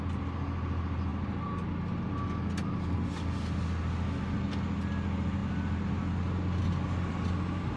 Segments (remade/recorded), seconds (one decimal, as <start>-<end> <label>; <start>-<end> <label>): 0.0-7.8 recorded

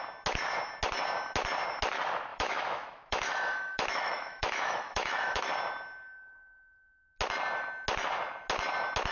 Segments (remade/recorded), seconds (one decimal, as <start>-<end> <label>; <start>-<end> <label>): 0.0-2.3 recorded; 2.3-5.4 remade; 5.4-9.1 recorded

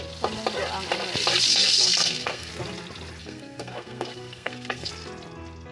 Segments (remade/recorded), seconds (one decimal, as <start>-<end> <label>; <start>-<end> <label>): 0.0-1.5 recorded; 1.5-2.5 remade; 2.5-3.2 recorded; 3.2-4.9 remade; 4.9-5.7 recorded

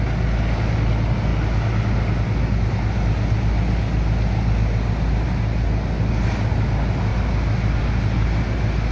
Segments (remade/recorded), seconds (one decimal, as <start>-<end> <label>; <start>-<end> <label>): 0.0-8.9 recorded